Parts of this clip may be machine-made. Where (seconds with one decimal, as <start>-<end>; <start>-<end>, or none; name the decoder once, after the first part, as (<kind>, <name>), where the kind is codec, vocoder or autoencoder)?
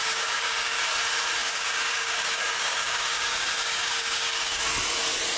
0.0-0.8 (codec, DAC); 1.4-4.6